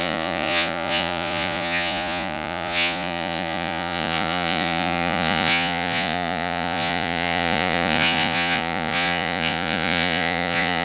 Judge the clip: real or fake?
fake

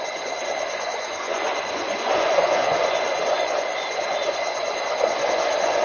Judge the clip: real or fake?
fake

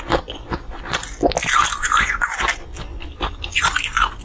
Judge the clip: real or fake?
real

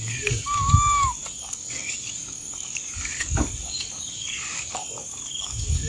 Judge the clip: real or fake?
fake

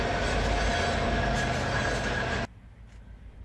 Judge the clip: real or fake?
real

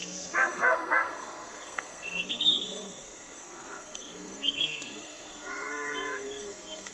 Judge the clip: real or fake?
fake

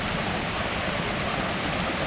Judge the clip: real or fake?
fake